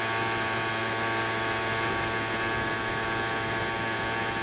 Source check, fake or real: real